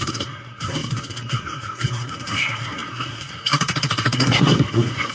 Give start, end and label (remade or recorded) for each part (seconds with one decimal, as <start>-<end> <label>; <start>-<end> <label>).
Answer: 0.0-5.1 remade